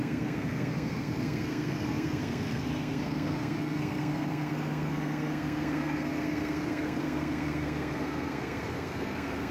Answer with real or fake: fake